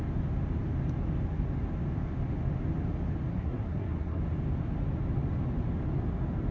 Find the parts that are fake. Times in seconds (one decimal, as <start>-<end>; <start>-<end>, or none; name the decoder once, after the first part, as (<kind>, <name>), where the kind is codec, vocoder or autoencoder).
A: 3.3-4.2 (codec, SNAC)